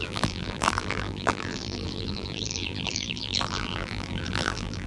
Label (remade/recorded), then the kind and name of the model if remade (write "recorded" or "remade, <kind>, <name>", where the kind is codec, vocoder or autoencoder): remade, vocoder, BigVGAN v2